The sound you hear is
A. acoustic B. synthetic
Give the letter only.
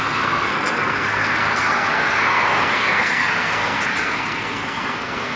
B